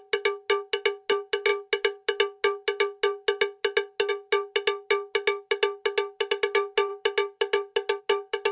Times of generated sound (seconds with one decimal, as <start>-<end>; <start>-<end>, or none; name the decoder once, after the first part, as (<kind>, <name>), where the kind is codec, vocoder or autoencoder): none